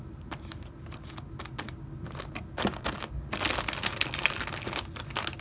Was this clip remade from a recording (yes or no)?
no